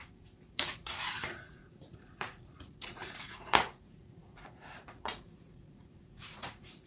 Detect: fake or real fake